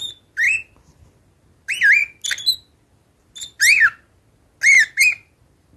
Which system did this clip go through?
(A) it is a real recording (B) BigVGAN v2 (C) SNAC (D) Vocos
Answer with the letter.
A